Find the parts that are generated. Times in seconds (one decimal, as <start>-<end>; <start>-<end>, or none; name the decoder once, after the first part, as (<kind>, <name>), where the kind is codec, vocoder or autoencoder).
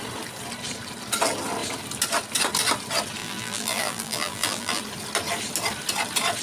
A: 3.2-4.8 (vocoder, BigVGAN v2)